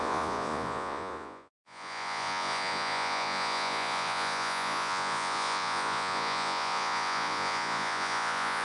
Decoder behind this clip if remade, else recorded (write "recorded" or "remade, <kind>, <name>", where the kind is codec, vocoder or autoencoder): remade, vocoder, Vocos